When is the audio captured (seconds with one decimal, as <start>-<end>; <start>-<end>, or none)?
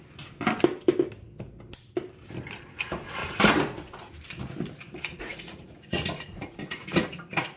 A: 0.0-3.2; 4.1-5.1